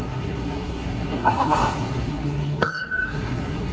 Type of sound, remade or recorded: remade